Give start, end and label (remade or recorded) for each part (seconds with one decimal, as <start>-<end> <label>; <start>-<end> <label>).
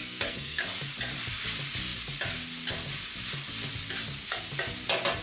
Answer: 0.0-0.6 remade; 0.6-5.2 recorded